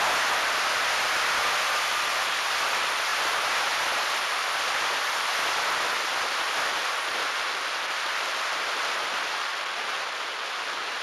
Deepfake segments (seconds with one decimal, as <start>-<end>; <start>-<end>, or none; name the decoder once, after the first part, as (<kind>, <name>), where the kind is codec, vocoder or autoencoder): 3.1-3.9 (vocoder, BigVGAN v2)